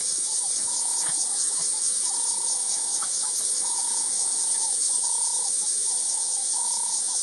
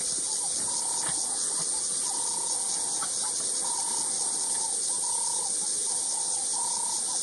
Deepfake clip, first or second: first